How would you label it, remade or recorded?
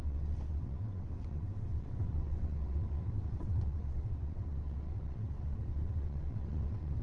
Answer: remade